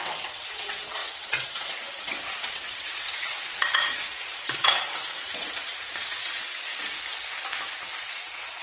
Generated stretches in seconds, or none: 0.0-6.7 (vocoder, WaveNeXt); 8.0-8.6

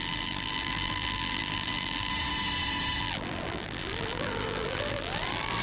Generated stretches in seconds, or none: 0.0-2.1 (vocoder, BigVGAN v2); 3.0-5.6

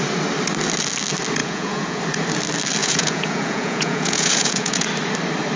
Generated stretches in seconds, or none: 1.4-2.0 (vocoder, Vocos); 2.8-4.9

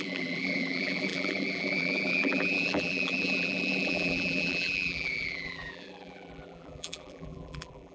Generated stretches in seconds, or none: 0.0-7.9 (vocoder, BigVGAN v2)

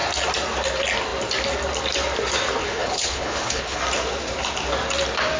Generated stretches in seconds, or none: 2.6-3.8 (codec, HILCodec)

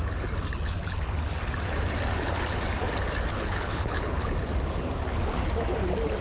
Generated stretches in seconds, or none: 3.3-4.3 (codec, HILCodec)

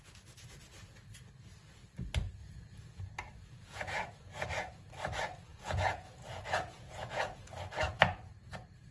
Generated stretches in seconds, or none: 2.4-3.0 (vocoder, Vocos); 3.4-4.1; 5.5-7.5

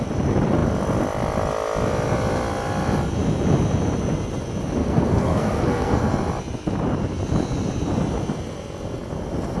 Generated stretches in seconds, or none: 4.8-6.1 (codec, SNAC)